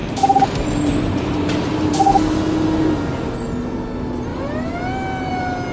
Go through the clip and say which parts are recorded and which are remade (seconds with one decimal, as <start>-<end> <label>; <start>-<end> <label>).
0.0-2.1 remade; 2.1-5.7 recorded